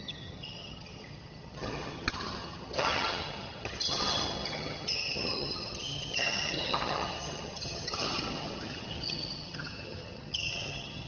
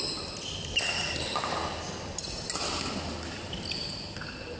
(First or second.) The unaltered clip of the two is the second